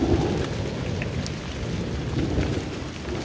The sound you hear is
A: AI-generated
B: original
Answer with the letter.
B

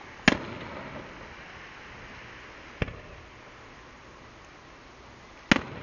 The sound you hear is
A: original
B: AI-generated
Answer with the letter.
A